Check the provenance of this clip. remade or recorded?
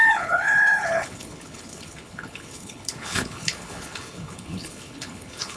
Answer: remade